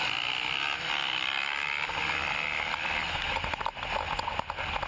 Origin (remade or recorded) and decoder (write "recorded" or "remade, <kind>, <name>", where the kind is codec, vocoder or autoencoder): recorded